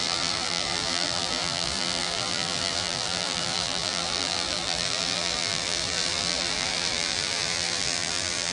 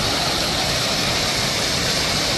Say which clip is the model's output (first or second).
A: first